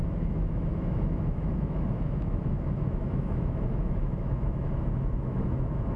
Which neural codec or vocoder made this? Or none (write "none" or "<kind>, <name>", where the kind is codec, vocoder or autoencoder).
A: autoencoder, DAC-VAE